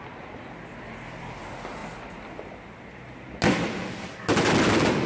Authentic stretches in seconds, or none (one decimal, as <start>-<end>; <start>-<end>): 0.0-5.1